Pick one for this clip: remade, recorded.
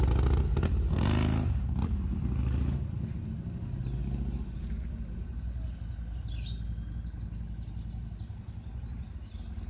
recorded